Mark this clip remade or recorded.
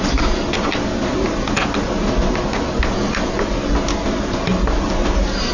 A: recorded